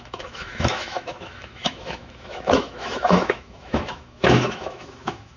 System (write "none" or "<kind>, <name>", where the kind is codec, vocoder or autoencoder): autoencoder, DAC-VAE